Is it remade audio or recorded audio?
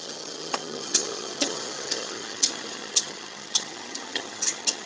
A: remade